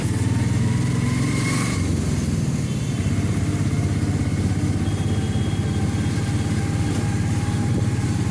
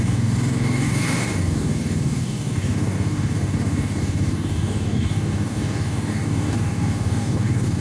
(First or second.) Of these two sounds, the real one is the first